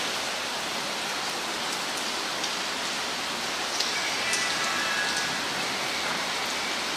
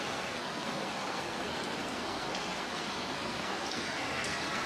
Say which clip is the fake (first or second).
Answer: second